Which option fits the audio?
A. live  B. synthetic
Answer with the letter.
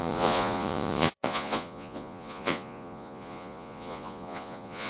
B